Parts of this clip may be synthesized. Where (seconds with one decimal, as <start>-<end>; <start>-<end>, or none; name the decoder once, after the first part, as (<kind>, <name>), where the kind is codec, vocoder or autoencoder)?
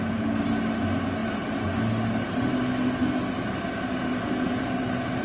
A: none